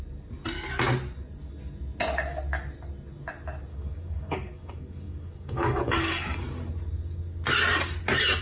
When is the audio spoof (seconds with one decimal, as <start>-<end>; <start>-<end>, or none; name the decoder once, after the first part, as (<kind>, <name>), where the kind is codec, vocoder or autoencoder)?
3.7-6.4 (codec, DAC)